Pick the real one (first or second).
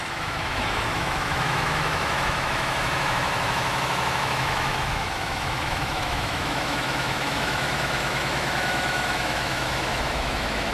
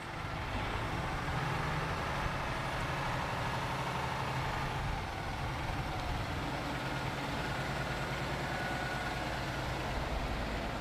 second